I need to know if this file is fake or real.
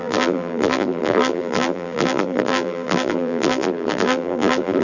fake